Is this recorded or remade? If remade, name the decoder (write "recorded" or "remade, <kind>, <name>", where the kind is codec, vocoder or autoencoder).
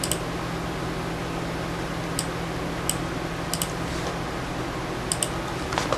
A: recorded